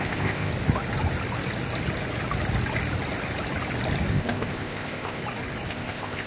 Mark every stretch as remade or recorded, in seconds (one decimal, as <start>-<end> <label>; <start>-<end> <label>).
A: 0.0-0.5 remade; 0.5-4.1 recorded; 4.1-5.2 remade; 5.2-5.7 recorded; 5.7-6.3 remade